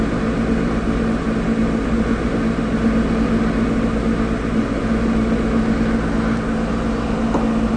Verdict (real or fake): real